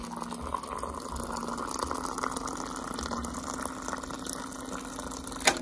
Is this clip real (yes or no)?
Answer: yes